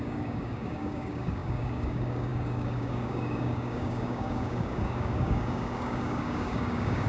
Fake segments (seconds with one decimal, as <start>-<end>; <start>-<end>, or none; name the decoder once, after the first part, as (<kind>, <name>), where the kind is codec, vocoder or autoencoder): 0.0-7.1 (codec, DAC)